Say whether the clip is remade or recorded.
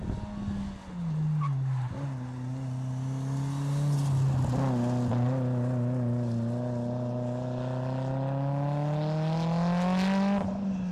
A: recorded